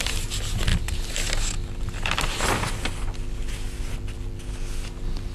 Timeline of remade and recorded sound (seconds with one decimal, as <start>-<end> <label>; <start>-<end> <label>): 0.0-5.3 recorded